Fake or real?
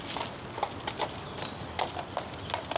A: real